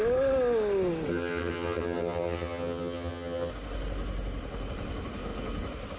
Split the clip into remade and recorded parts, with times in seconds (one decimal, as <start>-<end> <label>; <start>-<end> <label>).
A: 0.0-1.1 recorded; 1.1-3.5 remade; 3.5-6.0 recorded